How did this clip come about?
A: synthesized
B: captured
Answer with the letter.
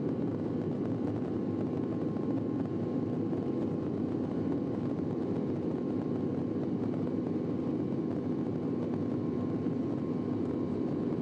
B